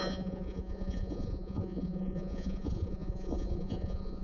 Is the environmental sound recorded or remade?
remade